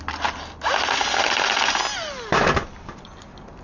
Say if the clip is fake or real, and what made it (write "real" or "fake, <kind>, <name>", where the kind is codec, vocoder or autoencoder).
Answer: real